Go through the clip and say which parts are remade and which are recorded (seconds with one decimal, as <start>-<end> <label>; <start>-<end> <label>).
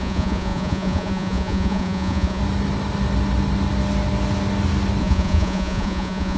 0.0-2.4 remade; 2.4-5.0 recorded; 5.0-6.4 remade